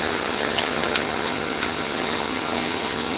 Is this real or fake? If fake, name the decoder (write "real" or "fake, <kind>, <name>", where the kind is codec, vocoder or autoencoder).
fake, vocoder, HiFi-GAN